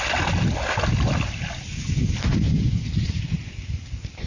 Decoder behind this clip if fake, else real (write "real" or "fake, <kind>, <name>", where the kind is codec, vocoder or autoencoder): real